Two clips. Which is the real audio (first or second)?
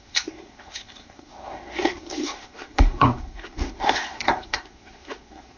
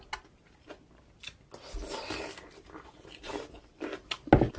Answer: second